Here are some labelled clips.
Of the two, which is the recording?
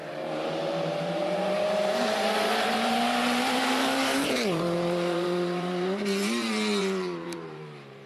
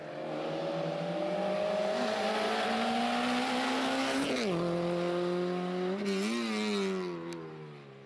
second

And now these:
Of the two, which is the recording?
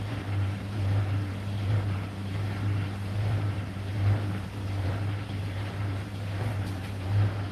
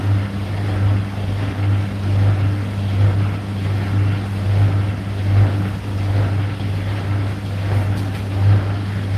second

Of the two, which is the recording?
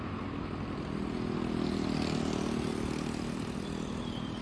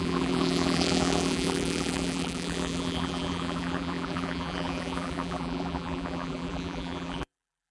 first